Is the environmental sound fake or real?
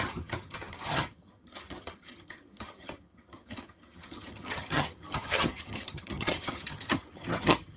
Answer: fake